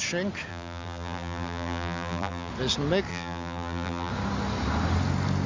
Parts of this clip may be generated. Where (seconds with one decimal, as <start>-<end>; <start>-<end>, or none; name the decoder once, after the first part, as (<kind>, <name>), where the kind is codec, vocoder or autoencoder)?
0.5-2.5 (vocoder, BigVGAN v2); 3.1-4.1